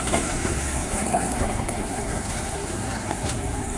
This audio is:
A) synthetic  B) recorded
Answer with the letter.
A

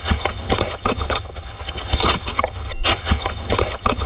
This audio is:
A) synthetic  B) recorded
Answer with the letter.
A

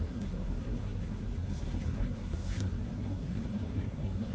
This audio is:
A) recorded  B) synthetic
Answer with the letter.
B